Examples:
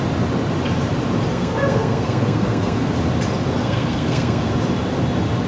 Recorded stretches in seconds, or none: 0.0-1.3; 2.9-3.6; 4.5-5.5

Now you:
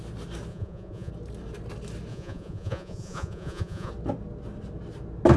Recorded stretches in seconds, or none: 0.0-0.5; 1.1-2.1; 3.9-5.4

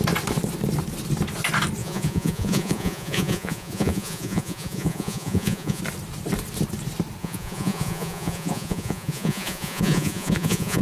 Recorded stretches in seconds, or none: 0.0-1.8; 5.8-7.2

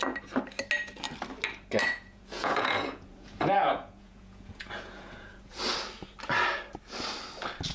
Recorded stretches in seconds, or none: 0.0-1.8; 5.6-7.7

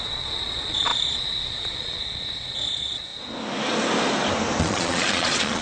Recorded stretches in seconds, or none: 3.1-4.6

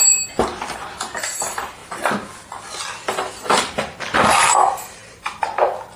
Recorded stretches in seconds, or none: 1.8-3.6

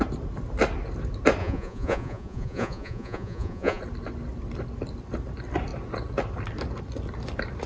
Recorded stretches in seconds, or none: 0.0-1.4; 3.8-7.7

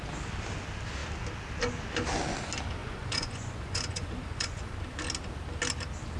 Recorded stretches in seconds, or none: 0.0-2.8; 4.7-6.2